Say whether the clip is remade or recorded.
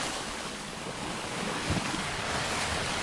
remade